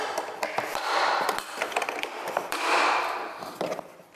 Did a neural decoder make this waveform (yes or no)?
yes